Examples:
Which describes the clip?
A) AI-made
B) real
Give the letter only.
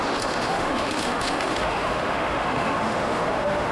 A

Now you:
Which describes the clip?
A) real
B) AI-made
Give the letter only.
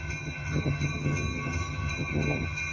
B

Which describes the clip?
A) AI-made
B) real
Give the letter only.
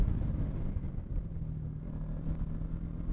B